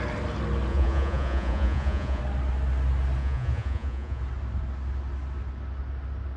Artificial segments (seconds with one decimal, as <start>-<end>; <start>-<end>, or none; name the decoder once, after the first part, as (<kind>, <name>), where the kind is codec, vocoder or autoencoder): 0.7-2.2 (vocoder, Vocos); 3.2-4.2